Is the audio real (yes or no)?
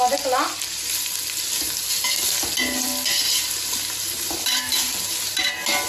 yes